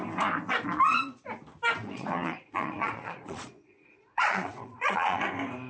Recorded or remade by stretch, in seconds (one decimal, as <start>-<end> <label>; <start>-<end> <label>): 0.0-1.8 recorded; 1.8-5.2 remade; 5.2-5.7 recorded